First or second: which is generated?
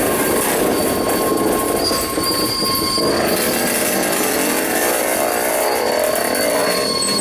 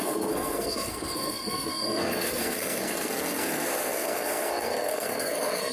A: second